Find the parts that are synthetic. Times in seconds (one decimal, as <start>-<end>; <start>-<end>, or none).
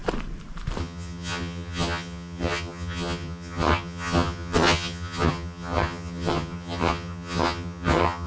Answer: 0.8-8.3